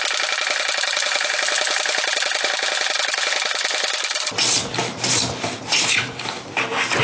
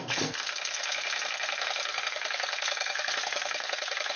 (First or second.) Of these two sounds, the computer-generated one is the second